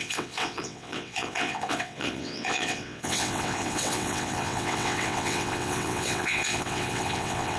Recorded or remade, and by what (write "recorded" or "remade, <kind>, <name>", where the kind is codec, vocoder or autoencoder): remade, vocoder, WaveNeXt